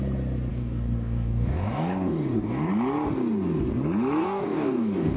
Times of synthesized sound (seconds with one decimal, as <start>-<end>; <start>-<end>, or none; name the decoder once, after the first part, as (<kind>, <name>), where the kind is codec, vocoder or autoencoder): 0.5-2.7 (codec, DAC); 4.2-5.2